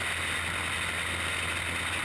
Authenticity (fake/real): real